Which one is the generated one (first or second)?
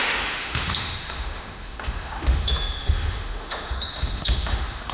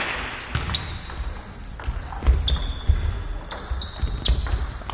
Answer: first